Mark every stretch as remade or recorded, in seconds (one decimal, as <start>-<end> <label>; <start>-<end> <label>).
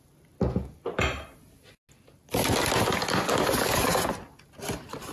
0.0-5.1 recorded